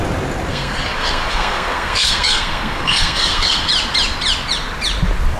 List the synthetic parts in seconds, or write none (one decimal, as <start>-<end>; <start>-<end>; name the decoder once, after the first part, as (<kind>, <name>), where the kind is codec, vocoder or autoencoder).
0.5-3.7 (codec, SNAC)